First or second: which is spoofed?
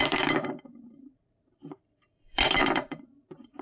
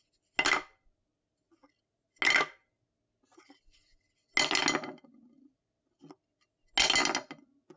first